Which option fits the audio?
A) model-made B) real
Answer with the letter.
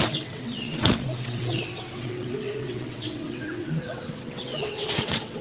A